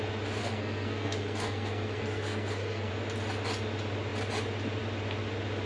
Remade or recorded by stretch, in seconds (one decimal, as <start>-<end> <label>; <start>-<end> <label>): 0.0-0.4 recorded; 0.4-2.9 remade; 2.9-5.7 recorded